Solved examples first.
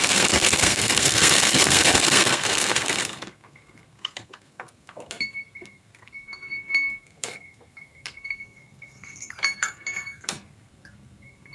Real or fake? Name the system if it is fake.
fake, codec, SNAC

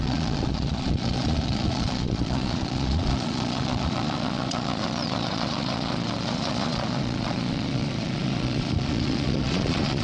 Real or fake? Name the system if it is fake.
fake, vocoder, Vocos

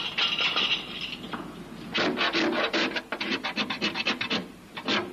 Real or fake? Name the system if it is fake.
real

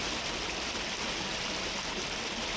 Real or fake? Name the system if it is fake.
real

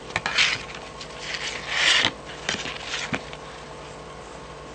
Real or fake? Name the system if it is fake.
real